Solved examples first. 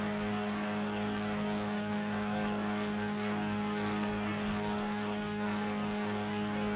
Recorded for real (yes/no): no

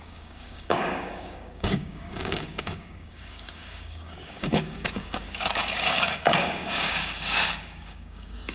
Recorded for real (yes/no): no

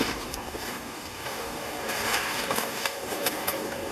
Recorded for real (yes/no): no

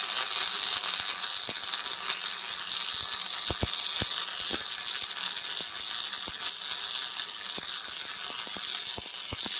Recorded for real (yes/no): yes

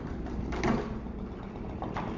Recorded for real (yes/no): yes